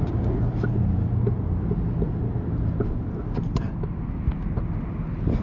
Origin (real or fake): real